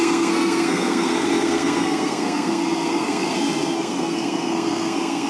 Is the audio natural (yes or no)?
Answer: no